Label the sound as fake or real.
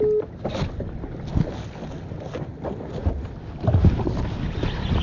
real